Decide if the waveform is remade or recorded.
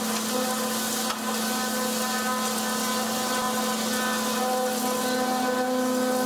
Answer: recorded